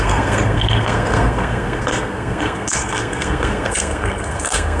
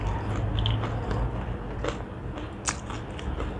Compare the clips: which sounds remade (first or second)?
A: first